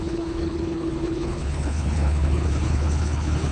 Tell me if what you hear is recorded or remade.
remade